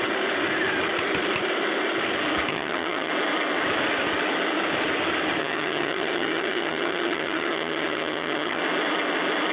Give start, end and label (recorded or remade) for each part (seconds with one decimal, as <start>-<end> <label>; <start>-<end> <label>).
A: 0.0-2.5 recorded; 2.5-3.1 remade; 3.1-5.4 recorded; 5.4-8.6 remade; 8.6-9.5 recorded